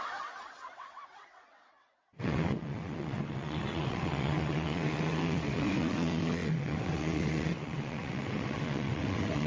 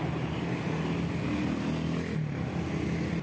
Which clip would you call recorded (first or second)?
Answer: second